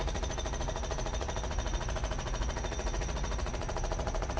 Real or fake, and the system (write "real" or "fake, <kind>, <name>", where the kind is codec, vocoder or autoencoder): fake, vocoder, Vocos